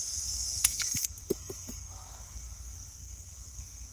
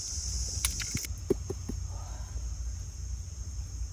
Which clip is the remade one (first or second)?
first